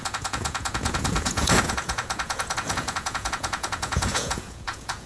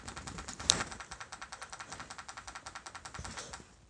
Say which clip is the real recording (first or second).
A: second